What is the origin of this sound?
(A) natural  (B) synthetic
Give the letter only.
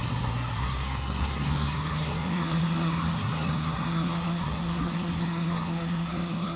B